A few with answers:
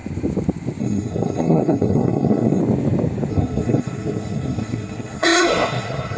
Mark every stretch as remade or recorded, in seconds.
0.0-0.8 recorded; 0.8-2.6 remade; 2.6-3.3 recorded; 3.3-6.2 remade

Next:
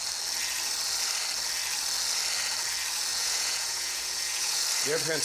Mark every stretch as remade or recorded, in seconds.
0.0-3.1 recorded; 3.1-4.6 remade; 4.6-5.2 recorded